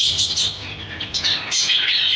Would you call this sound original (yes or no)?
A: yes